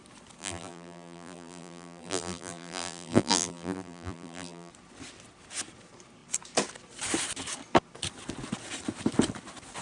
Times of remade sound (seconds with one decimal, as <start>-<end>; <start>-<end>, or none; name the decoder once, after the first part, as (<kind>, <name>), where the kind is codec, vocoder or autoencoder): 0.4-4.7 (vocoder, BigVGAN v2)